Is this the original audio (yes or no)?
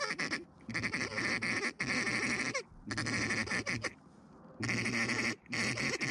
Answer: yes